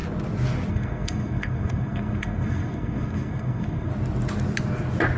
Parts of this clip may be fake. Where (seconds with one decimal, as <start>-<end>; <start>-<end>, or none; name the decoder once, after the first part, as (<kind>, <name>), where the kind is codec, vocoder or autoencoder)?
0.7-3.9 (codec, SNAC)

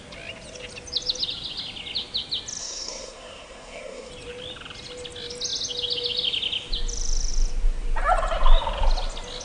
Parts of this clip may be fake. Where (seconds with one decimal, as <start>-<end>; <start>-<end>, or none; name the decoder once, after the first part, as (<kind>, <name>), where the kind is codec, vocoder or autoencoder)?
2.6-4.1 (codec, SNAC)